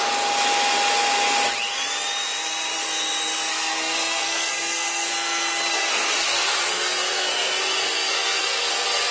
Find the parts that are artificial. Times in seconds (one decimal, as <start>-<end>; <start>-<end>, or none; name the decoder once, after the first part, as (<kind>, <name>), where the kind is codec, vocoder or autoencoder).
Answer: 3.5-5.1 (codec, SNAC); 5.7-9.1